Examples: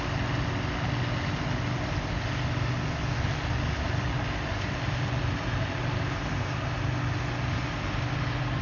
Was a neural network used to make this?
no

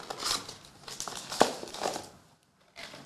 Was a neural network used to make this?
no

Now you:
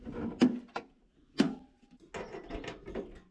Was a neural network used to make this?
no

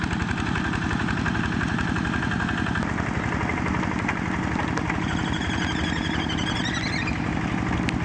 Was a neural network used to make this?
no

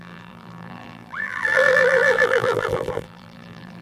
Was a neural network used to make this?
yes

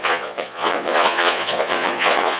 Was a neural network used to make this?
yes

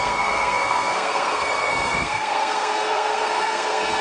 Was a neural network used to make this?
yes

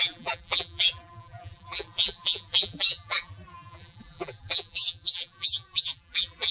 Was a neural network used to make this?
yes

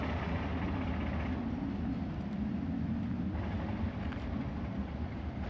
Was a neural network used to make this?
no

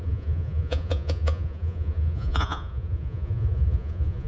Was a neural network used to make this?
yes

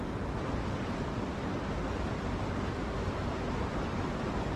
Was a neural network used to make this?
no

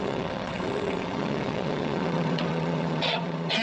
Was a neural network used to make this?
yes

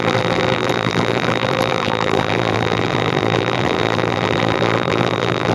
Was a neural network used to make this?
yes